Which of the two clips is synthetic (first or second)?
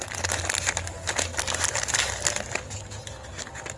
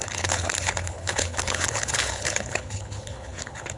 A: second